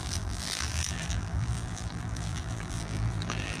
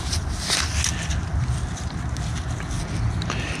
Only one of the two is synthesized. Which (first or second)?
first